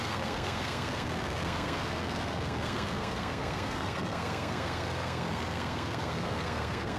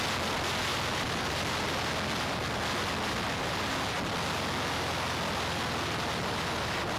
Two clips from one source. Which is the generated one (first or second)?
first